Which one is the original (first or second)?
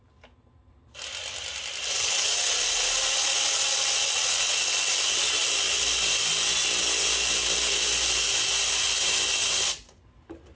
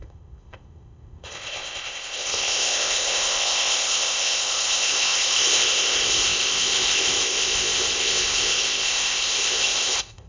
first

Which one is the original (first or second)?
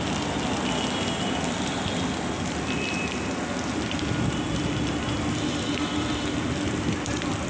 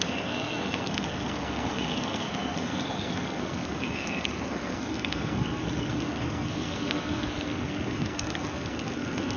first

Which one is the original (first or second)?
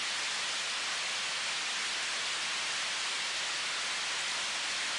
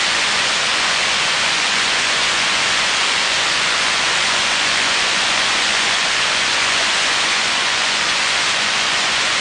first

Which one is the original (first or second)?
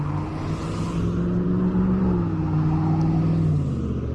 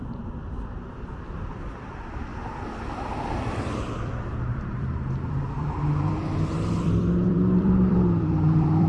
first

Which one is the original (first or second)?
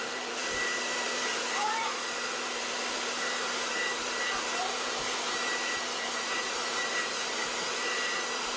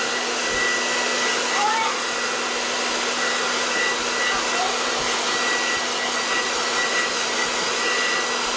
second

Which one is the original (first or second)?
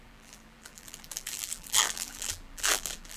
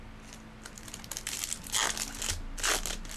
second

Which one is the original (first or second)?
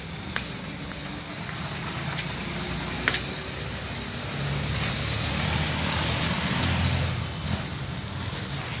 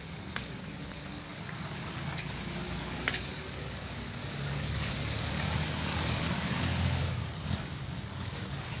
first